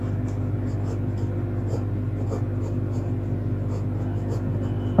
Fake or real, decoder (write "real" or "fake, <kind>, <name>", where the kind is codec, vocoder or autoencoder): real